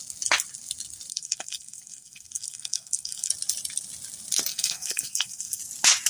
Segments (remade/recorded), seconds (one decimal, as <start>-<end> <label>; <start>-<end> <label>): 0.0-1.1 recorded; 1.1-3.3 remade; 3.3-4.5 recorded; 4.5-5.6 remade; 5.6-6.1 recorded